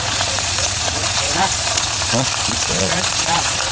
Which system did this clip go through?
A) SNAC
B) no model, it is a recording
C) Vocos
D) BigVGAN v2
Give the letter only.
C